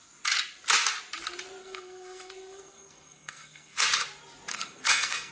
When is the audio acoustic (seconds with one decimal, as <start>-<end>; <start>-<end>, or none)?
0.0-1.6; 3.8-4.5